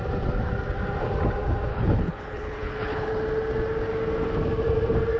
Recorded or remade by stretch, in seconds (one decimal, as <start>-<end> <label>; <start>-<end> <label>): 0.0-1.7 recorded; 1.7-3.1 remade; 3.1-5.2 recorded

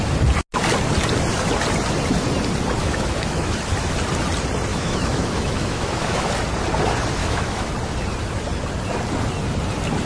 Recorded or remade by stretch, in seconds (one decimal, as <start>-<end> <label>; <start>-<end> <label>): 0.0-2.8 recorded; 2.8-3.6 remade; 3.6-4.7 recorded; 4.7-6.3 remade; 6.3-7.2 recorded; 7.2-7.7 remade; 7.7-10.1 recorded

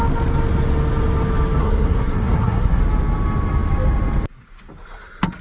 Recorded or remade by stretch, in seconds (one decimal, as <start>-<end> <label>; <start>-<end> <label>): 0.0-1.6 recorded; 1.6-2.8 remade; 2.8-5.4 recorded

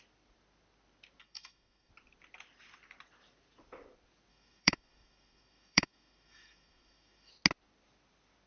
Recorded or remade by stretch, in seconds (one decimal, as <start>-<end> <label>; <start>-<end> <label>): 0.0-1.2 recorded; 1.2-1.9 remade; 1.9-4.3 recorded; 4.3-7.3 remade; 7.3-8.5 recorded

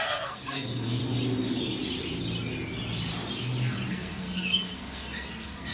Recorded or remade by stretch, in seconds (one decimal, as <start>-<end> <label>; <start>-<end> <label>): 0.0-1.0 remade; 1.0-3.9 recorded; 3.9-5.7 remade

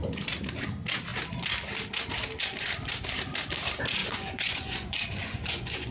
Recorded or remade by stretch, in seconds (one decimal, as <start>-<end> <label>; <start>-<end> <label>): 0.0-4.0 recorded; 4.0-5.9 remade

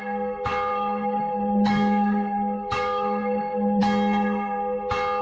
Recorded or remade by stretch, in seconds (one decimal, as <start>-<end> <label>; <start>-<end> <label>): 0.0-0.7 recorded; 0.7-3.8 remade; 3.8-5.2 recorded